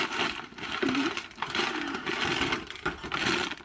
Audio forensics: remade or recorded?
recorded